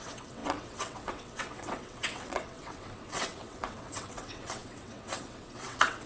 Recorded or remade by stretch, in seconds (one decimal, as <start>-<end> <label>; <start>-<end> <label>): 0.0-6.1 remade

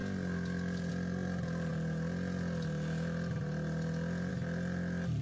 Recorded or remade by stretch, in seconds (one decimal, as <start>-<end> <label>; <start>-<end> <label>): 0.0-5.2 recorded

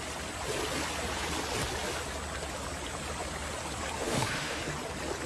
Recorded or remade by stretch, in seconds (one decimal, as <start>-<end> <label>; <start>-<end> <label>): 0.0-4.0 recorded; 4.0-4.6 remade; 4.6-5.3 recorded